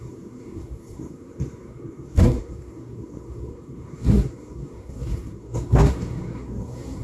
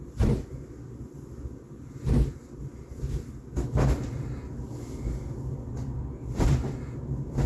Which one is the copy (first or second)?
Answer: first